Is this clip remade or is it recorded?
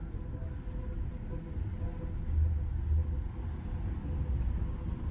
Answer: recorded